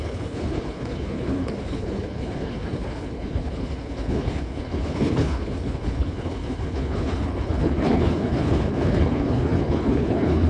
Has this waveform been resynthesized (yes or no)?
yes